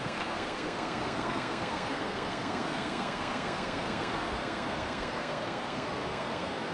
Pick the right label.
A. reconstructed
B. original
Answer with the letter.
A